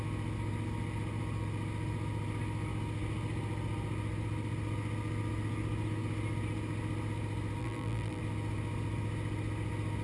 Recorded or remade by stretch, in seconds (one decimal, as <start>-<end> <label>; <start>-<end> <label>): 0.0-7.6 recorded; 7.6-8.2 remade; 8.2-10.0 recorded